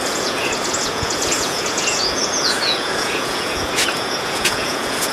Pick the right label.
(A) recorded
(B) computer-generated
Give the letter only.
B